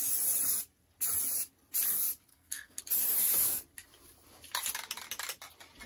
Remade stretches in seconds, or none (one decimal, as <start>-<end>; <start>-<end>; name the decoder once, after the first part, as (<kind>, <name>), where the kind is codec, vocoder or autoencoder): 2.3-2.8 (codec, SNAC)